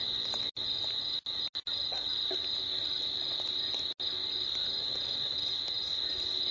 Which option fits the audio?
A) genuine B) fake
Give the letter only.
A